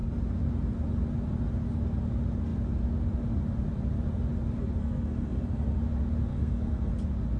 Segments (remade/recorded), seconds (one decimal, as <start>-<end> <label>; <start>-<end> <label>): 0.0-4.8 recorded; 4.8-5.8 remade; 5.8-6.3 recorded; 6.3-6.9 remade; 6.9-7.4 recorded